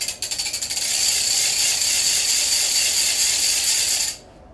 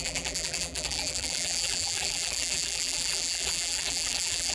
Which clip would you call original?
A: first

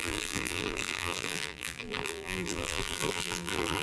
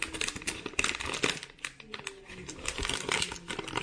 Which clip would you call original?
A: second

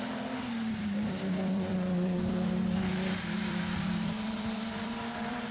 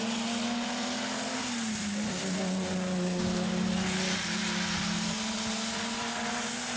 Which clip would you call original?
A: second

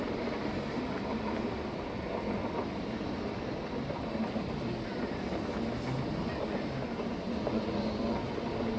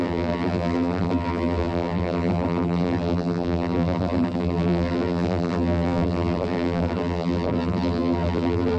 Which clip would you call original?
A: first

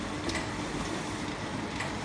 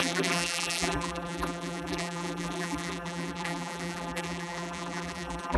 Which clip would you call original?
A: first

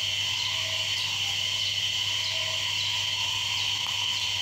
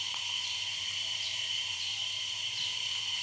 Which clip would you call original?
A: first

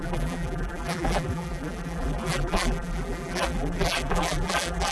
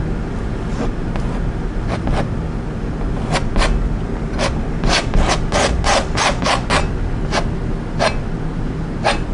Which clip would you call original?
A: second